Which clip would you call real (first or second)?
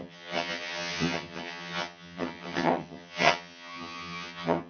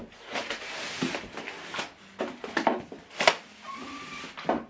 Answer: second